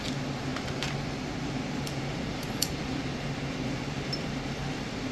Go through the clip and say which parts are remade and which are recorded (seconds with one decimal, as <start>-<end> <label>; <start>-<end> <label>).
0.0-5.1 recorded

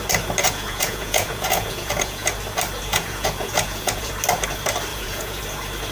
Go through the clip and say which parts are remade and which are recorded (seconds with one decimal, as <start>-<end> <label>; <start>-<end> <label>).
0.0-0.4 recorded; 0.4-2.3 remade; 2.3-2.9 recorded; 2.9-4.1 remade; 4.1-4.9 recorded; 4.9-5.4 remade; 5.4-5.9 recorded

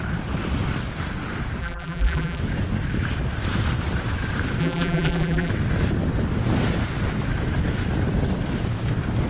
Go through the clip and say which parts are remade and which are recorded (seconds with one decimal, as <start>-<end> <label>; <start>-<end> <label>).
0.0-1.6 recorded; 1.6-2.4 remade; 2.4-4.6 recorded; 4.6-5.5 remade; 5.5-9.3 recorded

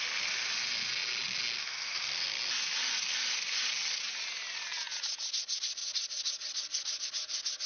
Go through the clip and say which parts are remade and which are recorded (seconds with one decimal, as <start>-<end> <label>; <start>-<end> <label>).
0.0-7.7 recorded